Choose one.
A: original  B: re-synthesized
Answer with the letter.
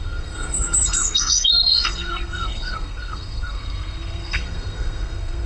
B